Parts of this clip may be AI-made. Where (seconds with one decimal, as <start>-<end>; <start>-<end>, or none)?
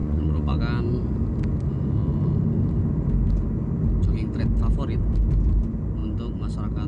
0.0-0.6